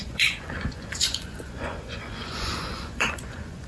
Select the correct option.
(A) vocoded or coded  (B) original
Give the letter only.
A